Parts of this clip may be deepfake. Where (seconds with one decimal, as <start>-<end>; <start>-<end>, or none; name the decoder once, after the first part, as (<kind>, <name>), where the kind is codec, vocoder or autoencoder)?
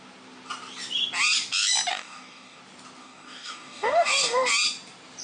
1.9-2.6 (codec, DAC); 3.0-4.5